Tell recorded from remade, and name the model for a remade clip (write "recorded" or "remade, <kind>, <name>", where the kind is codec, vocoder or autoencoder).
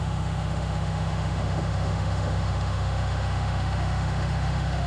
remade, autoencoder, DAC-VAE